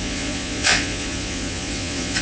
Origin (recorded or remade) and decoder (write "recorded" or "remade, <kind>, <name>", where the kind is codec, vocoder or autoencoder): remade, vocoder, Vocos